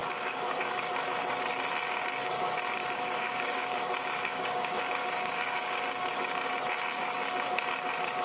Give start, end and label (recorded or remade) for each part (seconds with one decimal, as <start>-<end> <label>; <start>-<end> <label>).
0.0-0.9 remade; 0.9-2.2 recorded; 2.2-6.6 remade; 6.6-7.0 recorded; 7.0-7.6 remade; 7.6-8.2 recorded